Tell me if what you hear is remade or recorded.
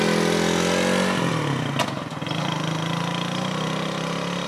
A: recorded